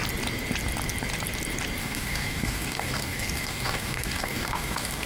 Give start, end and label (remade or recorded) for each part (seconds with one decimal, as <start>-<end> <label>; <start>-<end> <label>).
0.0-1.8 recorded; 1.8-5.1 remade